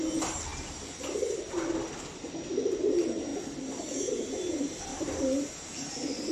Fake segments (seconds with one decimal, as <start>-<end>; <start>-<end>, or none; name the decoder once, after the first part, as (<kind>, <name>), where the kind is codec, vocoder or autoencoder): 0.5-2.3 (vocoder, BigVGAN v2); 4.9-5.5

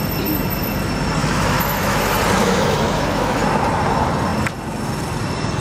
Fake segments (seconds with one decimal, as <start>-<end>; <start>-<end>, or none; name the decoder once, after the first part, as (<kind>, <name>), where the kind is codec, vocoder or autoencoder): 1.2-2.0 (autoencoder, DAC-VAE); 2.4-3.4